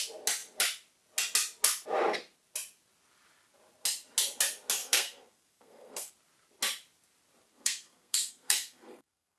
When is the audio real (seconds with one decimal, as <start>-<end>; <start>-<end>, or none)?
0.0-4.8; 6.1-7.5